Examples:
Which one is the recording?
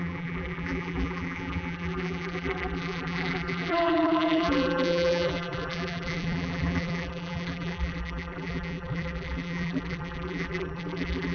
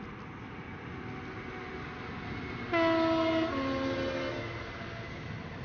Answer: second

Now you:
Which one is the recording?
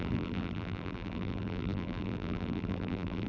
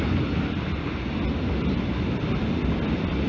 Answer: second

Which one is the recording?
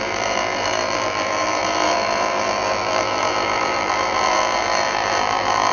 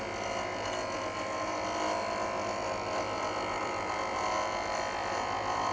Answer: second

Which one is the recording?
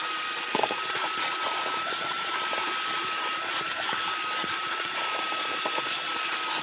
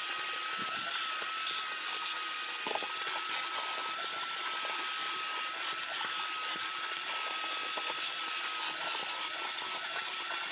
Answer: second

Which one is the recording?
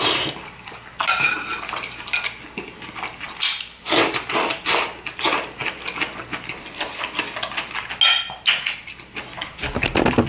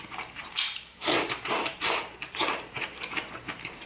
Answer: first